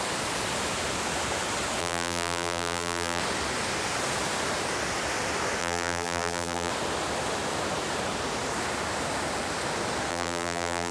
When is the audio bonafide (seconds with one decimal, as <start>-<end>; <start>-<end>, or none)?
0.0-1.8; 3.2-5.6; 6.7-10.1